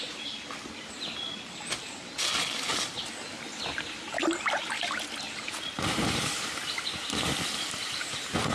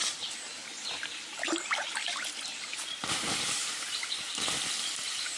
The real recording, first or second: first